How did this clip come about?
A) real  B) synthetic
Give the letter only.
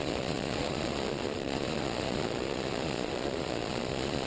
B